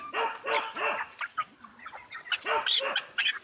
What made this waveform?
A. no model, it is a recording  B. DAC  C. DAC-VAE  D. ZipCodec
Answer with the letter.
A